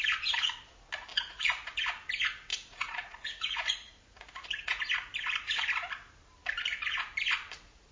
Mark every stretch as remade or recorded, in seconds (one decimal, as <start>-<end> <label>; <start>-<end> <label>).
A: 0.0-1.1 recorded; 1.1-1.8 remade; 1.8-2.5 recorded; 2.5-4.8 remade; 4.8-7.9 recorded